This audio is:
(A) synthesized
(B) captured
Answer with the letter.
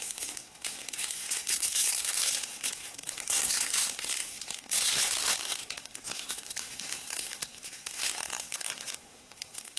A